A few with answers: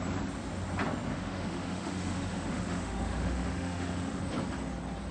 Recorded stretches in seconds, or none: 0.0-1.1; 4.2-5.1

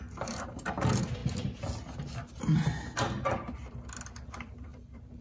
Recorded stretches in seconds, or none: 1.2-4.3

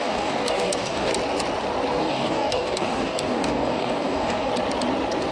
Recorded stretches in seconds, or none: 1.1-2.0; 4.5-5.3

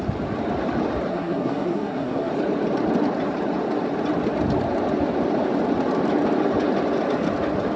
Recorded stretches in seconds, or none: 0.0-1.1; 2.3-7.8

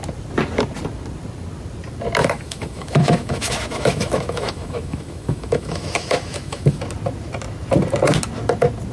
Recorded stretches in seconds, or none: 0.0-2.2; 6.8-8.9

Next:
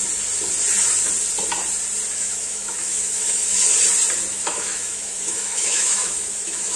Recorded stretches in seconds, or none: 0.0-2.1; 3.6-4.3